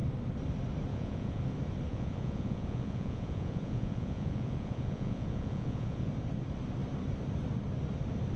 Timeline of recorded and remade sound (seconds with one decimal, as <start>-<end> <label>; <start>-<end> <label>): 0.0-0.9 recorded; 0.9-1.4 remade; 1.4-1.9 recorded; 1.9-6.1 remade; 6.1-8.4 recorded